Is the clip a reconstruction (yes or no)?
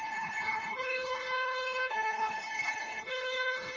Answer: yes